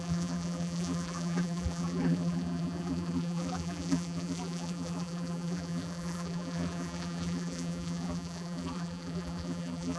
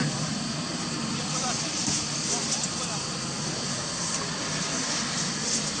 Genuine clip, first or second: second